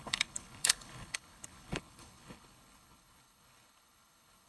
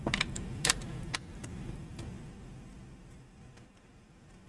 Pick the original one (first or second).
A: second